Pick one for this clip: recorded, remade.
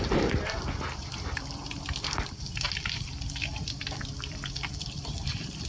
remade